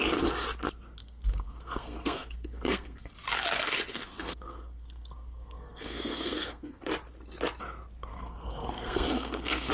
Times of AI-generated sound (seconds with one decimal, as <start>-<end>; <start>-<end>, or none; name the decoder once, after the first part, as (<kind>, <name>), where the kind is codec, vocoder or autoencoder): 1.0-3.1 (codec, SNAC); 3.9-6.8; 8.1-9.7